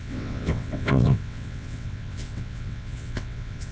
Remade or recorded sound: remade